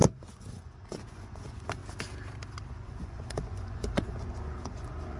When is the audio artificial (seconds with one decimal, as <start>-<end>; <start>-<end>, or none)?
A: 0.0-1.8; 2.7-5.2